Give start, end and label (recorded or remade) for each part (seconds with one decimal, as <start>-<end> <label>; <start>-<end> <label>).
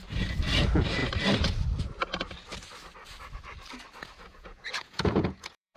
0.0-4.3 recorded; 4.3-5.8 remade